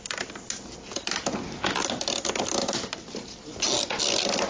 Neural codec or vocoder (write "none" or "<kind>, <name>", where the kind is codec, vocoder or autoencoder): none